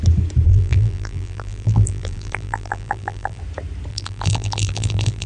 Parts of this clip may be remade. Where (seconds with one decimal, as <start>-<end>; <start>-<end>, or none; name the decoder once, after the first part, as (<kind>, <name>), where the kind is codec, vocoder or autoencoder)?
0.5-3.4 (vocoder, BigVGAN v2); 3.9-5.3

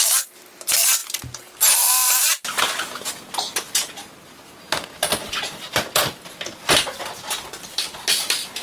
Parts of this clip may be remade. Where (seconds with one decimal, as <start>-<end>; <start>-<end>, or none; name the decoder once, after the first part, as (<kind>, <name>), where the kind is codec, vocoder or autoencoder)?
none

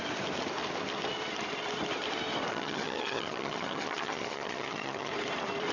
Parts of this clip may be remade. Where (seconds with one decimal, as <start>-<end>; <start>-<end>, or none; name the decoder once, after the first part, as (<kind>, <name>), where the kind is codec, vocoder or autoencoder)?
2.5-5.1 (vocoder, HiFi-GAN)

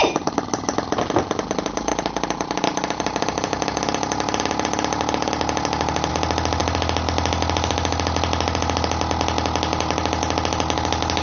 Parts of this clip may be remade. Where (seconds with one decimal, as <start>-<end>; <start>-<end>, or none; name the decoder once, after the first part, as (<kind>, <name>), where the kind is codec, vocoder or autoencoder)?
none

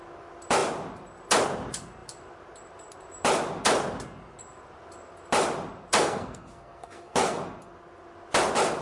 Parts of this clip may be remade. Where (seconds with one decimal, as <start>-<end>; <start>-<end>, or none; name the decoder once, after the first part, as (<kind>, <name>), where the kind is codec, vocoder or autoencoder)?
6.0-7.4 (codec, SNAC)